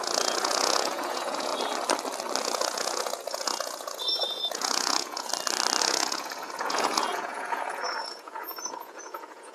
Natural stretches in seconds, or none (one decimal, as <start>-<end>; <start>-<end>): 1.5-2.4; 5.3-5.8